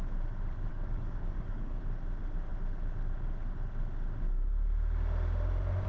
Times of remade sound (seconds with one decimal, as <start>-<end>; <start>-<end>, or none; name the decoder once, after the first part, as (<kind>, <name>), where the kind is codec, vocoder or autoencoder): 0.7-1.8 (codec, DAC)